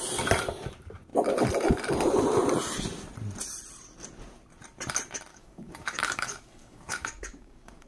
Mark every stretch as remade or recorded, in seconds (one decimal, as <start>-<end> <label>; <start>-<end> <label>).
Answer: 0.0-5.3 recorded; 5.3-7.9 remade